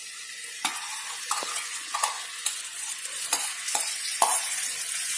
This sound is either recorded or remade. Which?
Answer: remade